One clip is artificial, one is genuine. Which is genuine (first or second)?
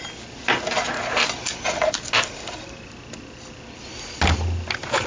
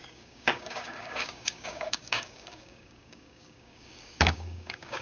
first